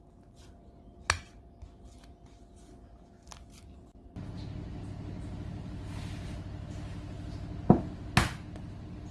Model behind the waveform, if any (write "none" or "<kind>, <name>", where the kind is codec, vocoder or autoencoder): none